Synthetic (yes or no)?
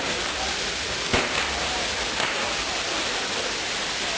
no